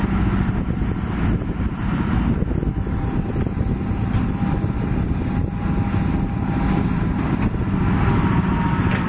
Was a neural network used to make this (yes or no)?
no